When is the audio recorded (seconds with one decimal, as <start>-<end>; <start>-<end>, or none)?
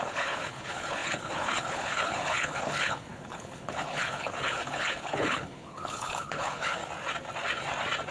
6.8-8.1